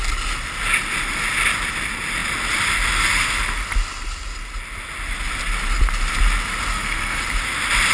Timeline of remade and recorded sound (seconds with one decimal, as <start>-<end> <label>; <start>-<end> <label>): 0.0-6.7 recorded; 6.7-7.2 remade; 7.2-7.9 recorded